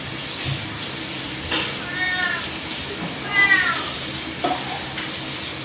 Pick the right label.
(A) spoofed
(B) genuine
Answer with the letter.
B